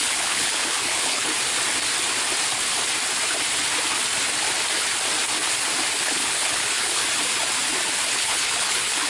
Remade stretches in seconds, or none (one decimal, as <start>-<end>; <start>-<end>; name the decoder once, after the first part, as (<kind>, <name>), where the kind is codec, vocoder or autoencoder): 0.0-1.3 (codec, HILCodec); 6.0-7.0; 8.1-9.1